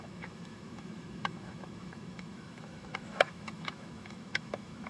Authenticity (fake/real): fake